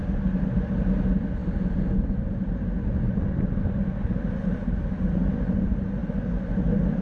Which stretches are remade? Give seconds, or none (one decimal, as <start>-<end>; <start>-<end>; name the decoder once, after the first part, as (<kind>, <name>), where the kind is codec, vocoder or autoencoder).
none